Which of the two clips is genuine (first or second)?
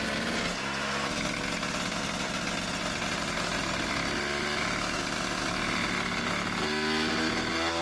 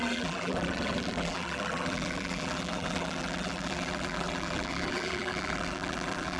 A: first